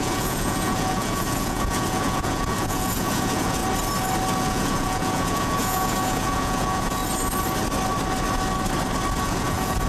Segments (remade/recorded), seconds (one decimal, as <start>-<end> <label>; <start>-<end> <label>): 0.0-3.6 remade; 3.6-4.4 recorded; 4.4-7.0 remade; 7.0-9.2 recorded; 9.2-9.9 remade